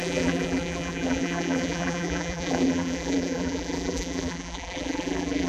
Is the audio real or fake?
fake